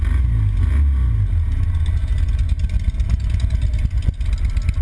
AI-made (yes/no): no